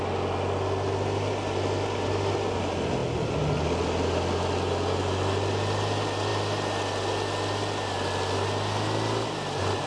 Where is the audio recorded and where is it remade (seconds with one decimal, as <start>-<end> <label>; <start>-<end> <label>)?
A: 0.0-9.9 recorded